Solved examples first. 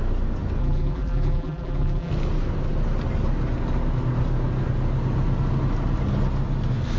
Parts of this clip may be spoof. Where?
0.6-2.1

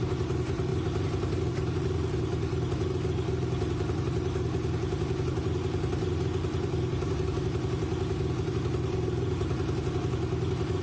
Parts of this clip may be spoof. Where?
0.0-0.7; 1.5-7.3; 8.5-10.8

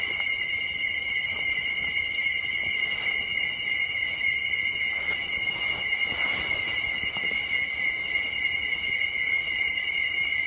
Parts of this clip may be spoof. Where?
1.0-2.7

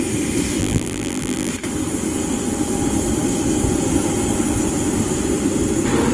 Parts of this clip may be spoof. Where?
0.6-1.5